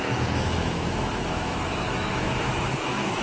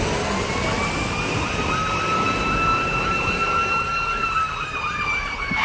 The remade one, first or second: first